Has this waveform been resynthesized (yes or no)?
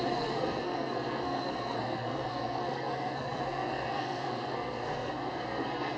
yes